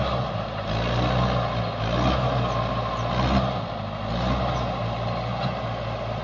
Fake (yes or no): no